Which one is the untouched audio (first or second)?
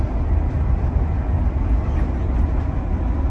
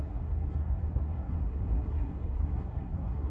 first